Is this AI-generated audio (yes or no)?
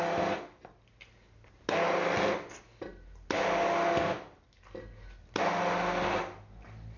no